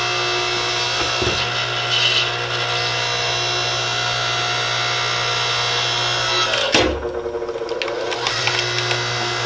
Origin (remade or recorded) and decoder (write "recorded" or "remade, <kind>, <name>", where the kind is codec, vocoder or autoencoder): recorded